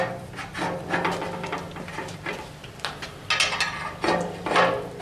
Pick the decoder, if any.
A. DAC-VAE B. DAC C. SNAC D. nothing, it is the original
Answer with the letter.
D